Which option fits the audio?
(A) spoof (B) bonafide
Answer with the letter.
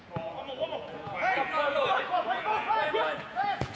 A